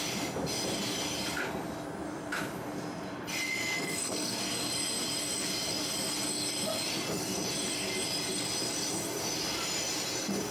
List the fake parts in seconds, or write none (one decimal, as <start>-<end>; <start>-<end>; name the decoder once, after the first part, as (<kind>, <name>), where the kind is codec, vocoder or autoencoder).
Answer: 3.6-4.4 (codec, SNAC)